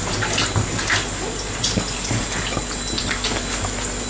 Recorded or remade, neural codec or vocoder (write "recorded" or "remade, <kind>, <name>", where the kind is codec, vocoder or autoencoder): recorded